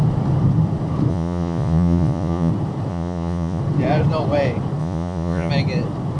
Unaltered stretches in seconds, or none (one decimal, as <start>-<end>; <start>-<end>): 0.0-1.1; 2.5-2.9; 3.6-4.8; 5.5-6.2